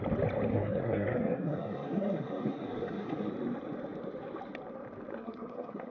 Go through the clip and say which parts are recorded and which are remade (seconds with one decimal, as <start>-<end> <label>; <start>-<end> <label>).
0.0-0.5 recorded; 0.5-3.3 remade; 3.3-5.1 recorded; 5.1-5.9 remade